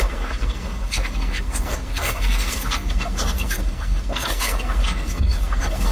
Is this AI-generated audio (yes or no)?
yes